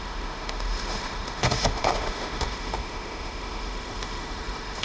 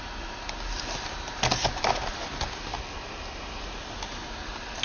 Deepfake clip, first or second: first